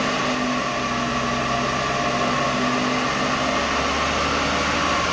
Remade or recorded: recorded